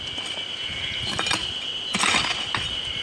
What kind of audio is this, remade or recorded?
recorded